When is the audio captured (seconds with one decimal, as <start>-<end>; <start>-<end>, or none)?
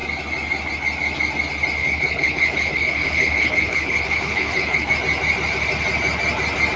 0.0-1.8; 4.9-6.8